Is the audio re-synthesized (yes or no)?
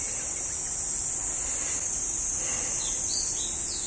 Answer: no